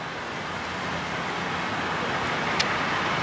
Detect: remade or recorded recorded